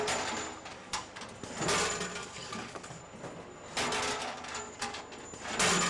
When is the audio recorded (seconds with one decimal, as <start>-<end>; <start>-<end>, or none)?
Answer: 0.0-0.7; 1.2-2.2; 3.0-4.2; 5.0-5.9